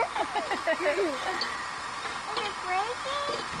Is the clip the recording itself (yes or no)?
yes